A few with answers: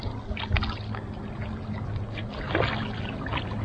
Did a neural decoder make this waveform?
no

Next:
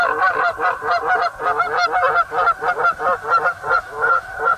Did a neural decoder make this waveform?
no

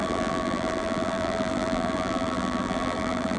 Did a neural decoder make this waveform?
yes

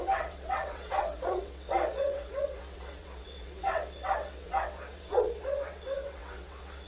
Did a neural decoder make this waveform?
yes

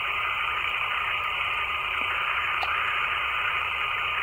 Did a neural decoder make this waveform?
yes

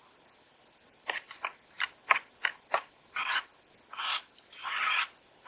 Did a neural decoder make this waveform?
no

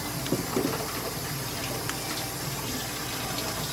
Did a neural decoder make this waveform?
no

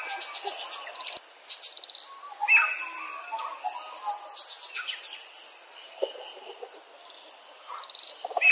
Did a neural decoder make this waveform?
no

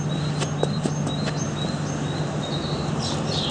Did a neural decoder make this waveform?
no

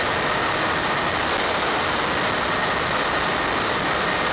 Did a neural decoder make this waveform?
no